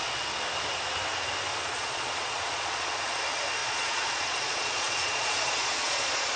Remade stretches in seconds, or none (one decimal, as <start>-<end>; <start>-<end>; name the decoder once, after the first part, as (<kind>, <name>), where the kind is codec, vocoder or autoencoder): 1.5-3.2 (vocoder, Vocos); 3.6-6.4